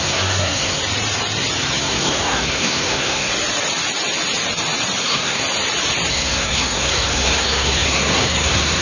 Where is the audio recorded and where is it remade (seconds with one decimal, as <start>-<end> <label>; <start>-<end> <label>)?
0.0-0.8 remade; 0.8-1.8 recorded; 1.8-3.3 remade; 3.3-5.0 recorded; 5.0-5.4 remade; 5.4-6.1 recorded; 6.1-8.8 remade